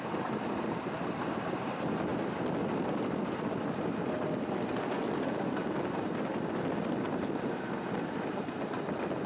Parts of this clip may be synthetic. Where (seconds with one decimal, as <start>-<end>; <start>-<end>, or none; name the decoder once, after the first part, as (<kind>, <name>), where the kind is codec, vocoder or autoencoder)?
none